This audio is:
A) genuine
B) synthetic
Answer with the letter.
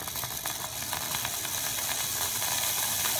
A